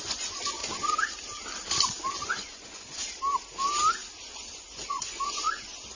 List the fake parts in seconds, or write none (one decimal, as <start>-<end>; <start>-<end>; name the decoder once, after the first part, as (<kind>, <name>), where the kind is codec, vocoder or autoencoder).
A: 0.0-0.6 (vocoder, Vocos); 2.1-3.0; 4.2-6.0